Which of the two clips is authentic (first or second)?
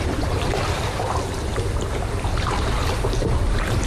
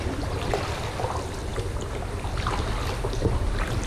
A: second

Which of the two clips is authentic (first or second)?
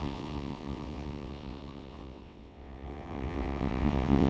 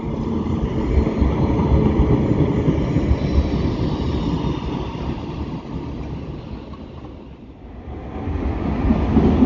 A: second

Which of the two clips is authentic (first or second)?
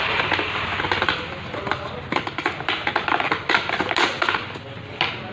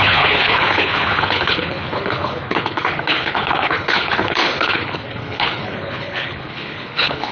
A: first